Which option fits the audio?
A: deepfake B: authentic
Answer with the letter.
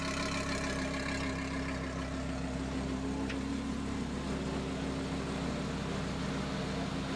B